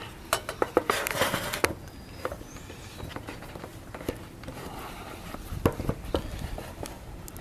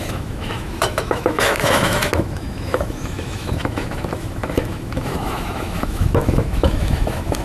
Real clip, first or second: first